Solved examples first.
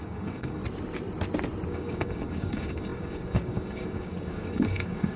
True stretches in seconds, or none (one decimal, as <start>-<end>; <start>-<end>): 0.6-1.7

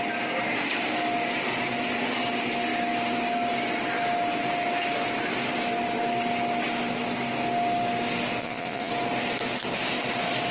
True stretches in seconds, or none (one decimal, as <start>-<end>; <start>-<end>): 0.0-8.4; 8.9-10.5

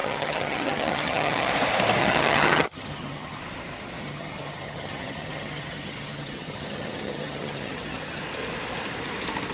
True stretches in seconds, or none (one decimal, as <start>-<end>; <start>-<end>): 1.5-2.0; 3.4-4.0; 8.2-9.5